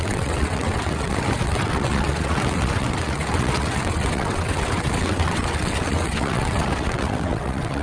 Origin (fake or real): fake